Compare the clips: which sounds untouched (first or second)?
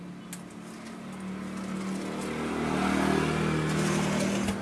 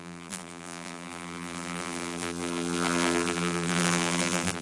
first